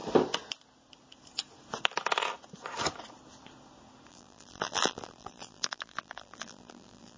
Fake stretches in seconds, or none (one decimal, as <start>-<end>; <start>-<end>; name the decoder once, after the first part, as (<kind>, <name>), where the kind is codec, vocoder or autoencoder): 4.1-7.2 (vocoder, BigVGAN v2)

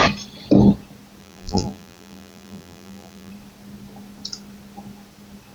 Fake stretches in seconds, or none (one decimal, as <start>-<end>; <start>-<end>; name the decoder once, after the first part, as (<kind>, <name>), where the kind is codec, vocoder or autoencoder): 1.2-3.3 (vocoder, BigVGAN v2)

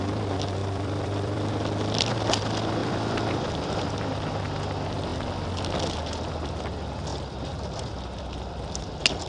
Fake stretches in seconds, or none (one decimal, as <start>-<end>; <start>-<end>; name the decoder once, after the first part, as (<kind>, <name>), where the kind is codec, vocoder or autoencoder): 0.6-1.5 (vocoder, BigVGAN v2); 2.8-3.9; 7.1-8.8